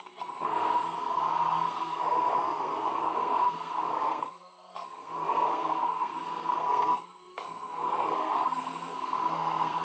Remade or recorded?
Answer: remade